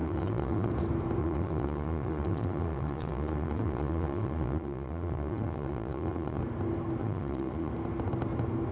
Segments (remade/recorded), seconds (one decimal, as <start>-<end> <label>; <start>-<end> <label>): 0.0-0.7 remade; 0.7-1.2 recorded; 1.2-6.4 remade; 6.4-7.0 recorded; 7.0-7.7 remade; 7.7-8.7 recorded